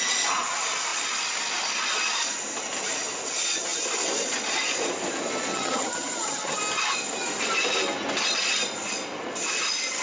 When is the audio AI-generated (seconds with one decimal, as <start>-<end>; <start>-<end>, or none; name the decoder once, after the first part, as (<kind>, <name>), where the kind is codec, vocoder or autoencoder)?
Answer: 5.5-6.6 (vocoder, HiFi-GAN)